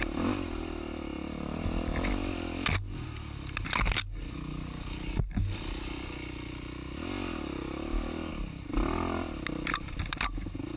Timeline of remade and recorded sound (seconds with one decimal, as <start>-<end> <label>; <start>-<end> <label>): 0.0-10.8 recorded